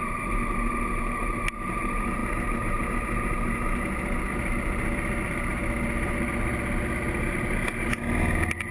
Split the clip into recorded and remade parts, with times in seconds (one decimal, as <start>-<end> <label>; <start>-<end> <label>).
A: 0.0-8.7 recorded